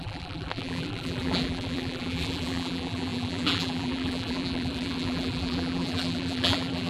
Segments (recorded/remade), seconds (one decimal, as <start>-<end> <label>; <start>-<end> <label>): 0.0-6.9 remade